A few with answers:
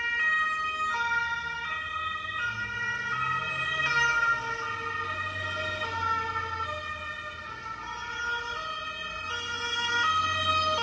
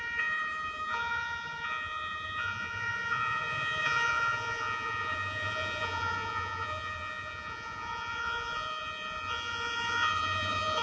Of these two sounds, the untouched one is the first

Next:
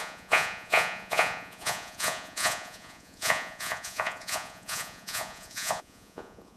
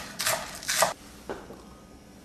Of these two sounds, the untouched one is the second